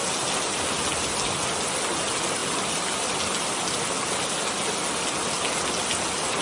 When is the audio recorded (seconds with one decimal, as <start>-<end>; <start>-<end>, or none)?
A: 0.0-6.4

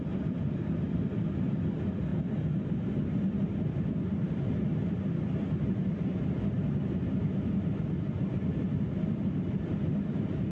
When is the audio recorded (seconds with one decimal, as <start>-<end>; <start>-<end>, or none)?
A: 0.0-10.5